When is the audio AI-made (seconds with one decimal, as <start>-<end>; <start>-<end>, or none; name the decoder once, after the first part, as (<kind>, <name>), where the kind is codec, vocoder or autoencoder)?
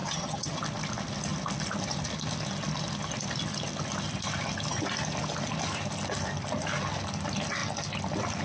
0.0-0.6 (vocoder, HiFi-GAN)